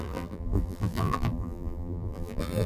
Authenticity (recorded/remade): remade